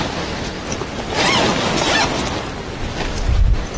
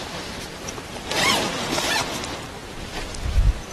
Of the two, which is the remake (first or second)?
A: second